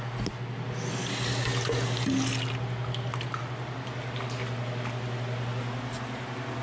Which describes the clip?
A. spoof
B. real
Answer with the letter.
B